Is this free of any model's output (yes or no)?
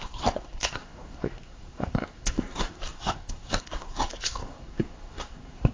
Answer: no